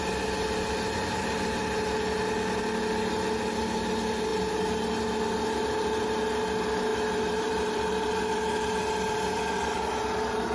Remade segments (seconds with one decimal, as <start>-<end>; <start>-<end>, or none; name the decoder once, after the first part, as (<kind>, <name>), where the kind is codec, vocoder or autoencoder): 6.9-9.4 (vocoder, BigVGAN v2)